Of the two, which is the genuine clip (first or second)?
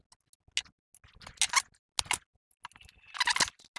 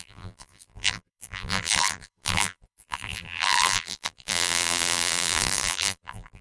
first